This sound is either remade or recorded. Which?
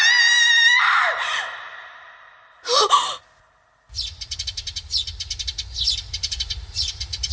recorded